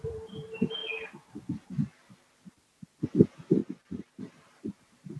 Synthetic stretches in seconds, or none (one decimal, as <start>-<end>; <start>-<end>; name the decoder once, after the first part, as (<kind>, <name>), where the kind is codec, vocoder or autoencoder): 0.0-0.8 (vocoder, BigVGAN v2); 3.1-5.2